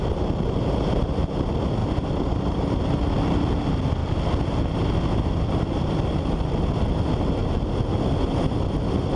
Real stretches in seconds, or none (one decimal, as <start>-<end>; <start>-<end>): 0.0-1.8; 2.8-9.2